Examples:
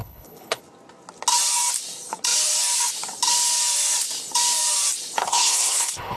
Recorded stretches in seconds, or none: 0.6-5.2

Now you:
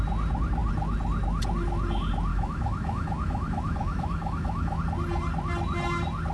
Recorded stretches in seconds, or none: 0.0-2.3; 4.8-6.3

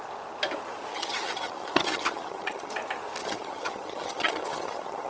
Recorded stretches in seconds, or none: 0.0-0.9; 2.7-3.2

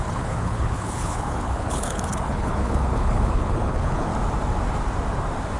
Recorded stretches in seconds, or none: 4.1-5.6

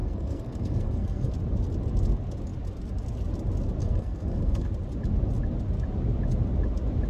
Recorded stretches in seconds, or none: 1.3-3.8; 4.7-7.1

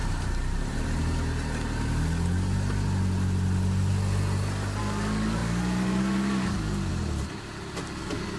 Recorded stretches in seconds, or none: 0.0-4.8; 6.9-8.0